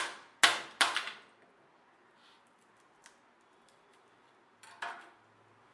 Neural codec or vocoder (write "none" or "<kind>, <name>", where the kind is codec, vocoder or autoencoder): none